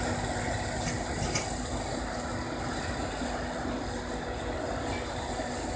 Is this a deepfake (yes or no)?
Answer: no